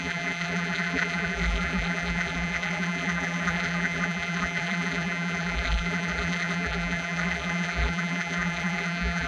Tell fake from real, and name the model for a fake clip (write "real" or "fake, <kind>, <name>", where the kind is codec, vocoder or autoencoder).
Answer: fake, vocoder, BigVGAN v2